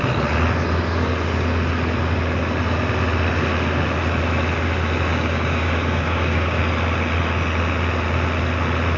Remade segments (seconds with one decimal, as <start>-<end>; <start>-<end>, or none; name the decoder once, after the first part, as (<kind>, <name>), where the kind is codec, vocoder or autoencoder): 5.1-6.6 (codec, DAC)